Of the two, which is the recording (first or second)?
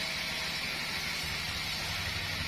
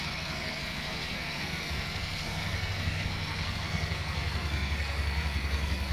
first